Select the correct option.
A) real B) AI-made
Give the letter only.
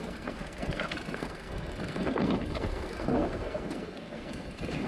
B